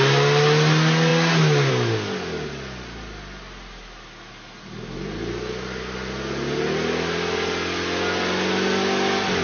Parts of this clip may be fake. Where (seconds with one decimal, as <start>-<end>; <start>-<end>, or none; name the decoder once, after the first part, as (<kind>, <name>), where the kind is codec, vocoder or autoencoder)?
none